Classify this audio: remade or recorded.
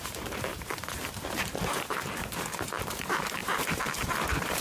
remade